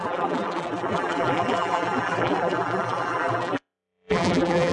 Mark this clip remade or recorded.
remade